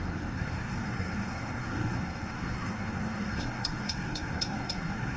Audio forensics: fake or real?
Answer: fake